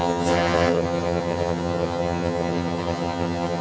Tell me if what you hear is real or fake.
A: fake